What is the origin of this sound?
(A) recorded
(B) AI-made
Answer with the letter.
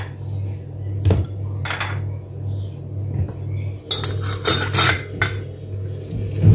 A